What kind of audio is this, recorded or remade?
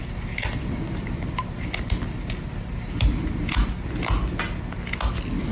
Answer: recorded